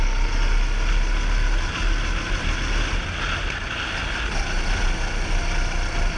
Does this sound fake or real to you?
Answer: real